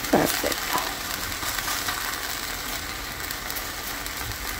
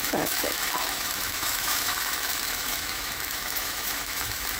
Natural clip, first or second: first